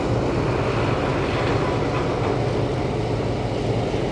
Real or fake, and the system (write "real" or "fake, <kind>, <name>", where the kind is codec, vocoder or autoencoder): real